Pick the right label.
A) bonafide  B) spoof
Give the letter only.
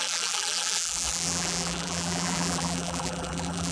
B